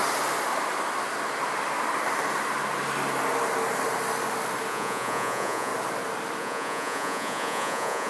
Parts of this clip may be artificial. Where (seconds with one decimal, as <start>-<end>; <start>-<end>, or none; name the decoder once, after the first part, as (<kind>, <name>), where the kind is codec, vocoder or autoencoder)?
4.7-5.7 (vocoder, Vocos); 6.4-8.1

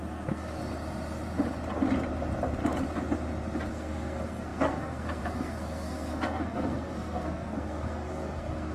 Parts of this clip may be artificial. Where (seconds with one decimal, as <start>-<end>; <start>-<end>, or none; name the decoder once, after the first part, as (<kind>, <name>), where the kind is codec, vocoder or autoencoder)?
0.0-0.6 (codec, SNAC); 3.7-8.7